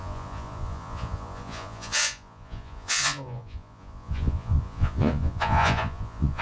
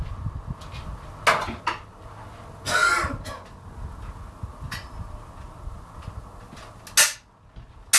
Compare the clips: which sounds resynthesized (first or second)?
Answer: first